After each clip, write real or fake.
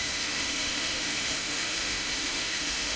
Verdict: fake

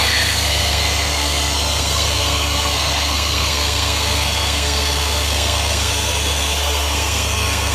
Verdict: fake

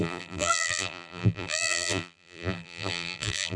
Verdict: fake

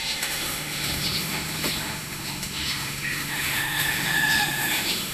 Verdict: fake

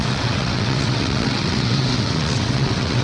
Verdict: fake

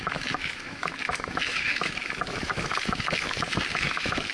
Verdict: fake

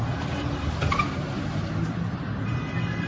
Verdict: real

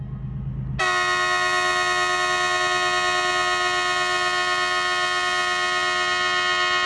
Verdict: real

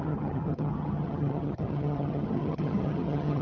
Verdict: fake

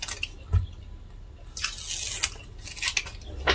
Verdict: real